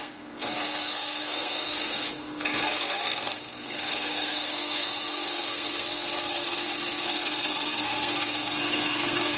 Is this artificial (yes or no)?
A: yes